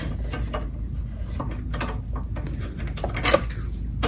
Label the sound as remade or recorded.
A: recorded